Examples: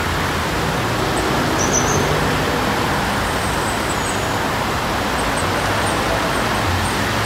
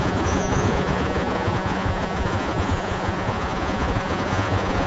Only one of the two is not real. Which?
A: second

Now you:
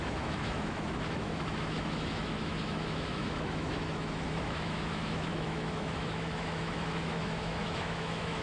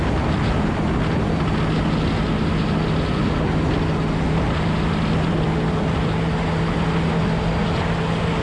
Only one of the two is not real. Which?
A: first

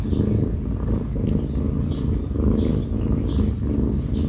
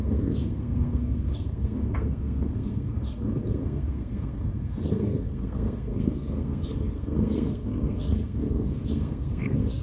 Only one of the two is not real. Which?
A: second